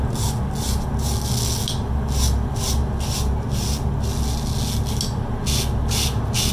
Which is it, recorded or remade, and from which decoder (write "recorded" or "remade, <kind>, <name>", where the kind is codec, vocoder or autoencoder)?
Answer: recorded